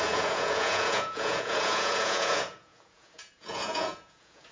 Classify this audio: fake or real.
fake